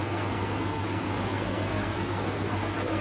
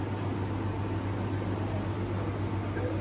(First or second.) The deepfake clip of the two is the first